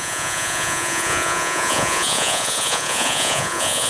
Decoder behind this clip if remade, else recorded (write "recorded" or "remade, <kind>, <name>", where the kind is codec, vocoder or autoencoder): remade, vocoder, Vocos